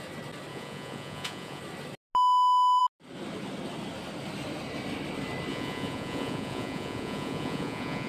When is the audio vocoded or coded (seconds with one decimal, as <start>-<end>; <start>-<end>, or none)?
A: 0.5-1.6; 5.5-8.1